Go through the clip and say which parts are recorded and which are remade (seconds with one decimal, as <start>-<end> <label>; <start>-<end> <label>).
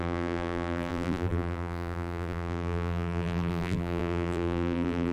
0.0-5.1 remade